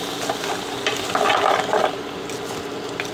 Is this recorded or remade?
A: recorded